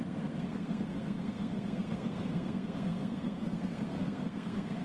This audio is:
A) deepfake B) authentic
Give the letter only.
A